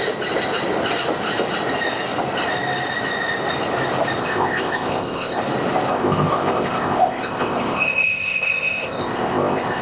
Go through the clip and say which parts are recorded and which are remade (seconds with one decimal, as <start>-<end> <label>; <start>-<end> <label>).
0.0-4.2 recorded; 4.2-5.4 remade; 5.4-5.9 recorded; 5.9-9.8 remade